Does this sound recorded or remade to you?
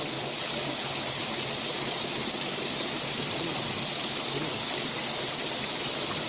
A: recorded